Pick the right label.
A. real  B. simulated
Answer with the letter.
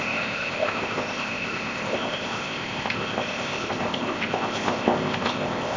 B